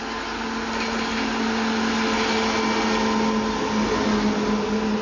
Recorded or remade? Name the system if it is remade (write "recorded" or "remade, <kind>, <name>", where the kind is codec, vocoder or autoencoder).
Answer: recorded